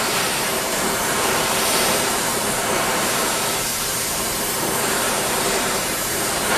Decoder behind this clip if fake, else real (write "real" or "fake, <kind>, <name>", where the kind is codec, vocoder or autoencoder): fake, vocoder, BigVGAN v2